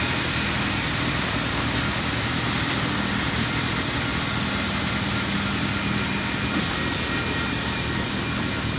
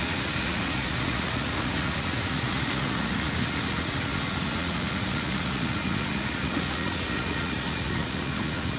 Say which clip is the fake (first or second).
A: second